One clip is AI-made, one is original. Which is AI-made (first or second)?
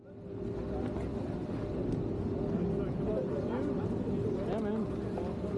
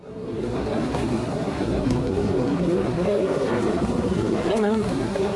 second